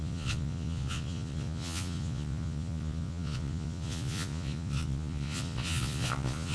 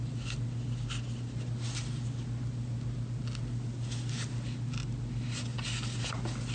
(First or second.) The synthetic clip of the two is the first